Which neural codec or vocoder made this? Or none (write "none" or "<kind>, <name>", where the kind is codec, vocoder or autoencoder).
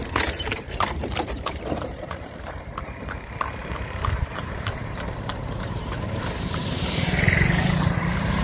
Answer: vocoder, BigVGAN v2